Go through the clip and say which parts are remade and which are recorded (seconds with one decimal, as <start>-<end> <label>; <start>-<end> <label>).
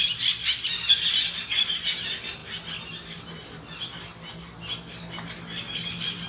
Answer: 0.0-6.3 recorded